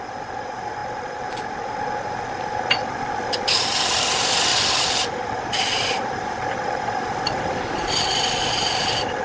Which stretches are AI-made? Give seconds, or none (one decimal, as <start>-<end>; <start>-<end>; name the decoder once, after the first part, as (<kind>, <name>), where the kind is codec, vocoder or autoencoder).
4.5-8.1 (vocoder, BigVGAN v2)